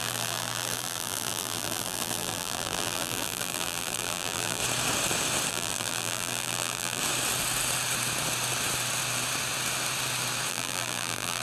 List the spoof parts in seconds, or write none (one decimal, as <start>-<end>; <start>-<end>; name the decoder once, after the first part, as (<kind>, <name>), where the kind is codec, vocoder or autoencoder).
0.0-4.6 (vocoder, BigVGAN v2); 5.5-7.0; 10.5-11.4